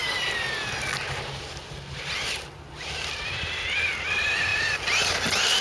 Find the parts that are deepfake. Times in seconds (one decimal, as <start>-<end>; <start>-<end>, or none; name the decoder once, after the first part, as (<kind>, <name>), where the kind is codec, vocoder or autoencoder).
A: none